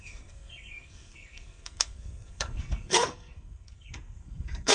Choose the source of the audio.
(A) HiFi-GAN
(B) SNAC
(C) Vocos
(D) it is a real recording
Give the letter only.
B